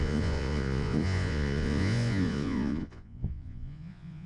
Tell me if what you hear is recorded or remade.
remade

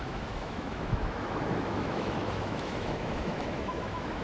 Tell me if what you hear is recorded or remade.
remade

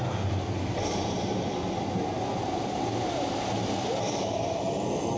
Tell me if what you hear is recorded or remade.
recorded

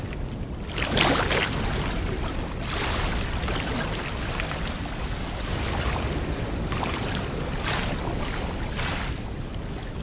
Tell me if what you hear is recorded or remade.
recorded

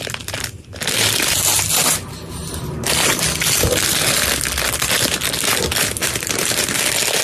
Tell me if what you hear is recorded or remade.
recorded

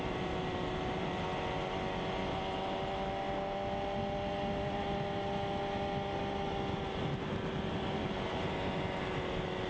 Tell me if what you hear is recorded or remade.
recorded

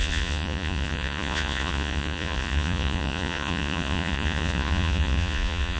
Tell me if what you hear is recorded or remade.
remade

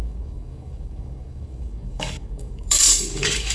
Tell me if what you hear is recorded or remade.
remade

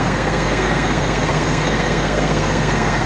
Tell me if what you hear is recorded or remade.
remade